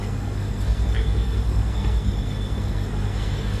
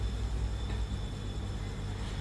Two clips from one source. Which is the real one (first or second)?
second